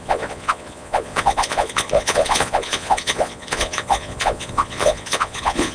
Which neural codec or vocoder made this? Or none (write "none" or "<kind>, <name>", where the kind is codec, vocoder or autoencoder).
vocoder, Vocos